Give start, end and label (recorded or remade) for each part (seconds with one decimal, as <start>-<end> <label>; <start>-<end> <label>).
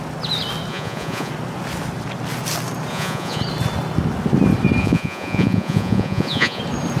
0.0-0.7 recorded; 0.7-1.3 remade; 1.3-2.9 recorded; 2.9-3.4 remade; 3.4-4.8 recorded; 4.8-6.6 remade; 6.6-7.0 recorded